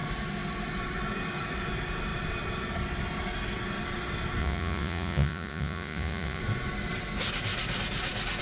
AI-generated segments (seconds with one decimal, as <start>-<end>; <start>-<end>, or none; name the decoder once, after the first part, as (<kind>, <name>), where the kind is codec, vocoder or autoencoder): 4.4-6.4 (vocoder, Vocos)